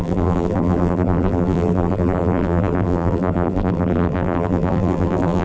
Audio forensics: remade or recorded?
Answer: remade